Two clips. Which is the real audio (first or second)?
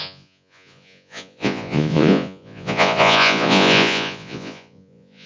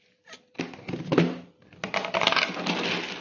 second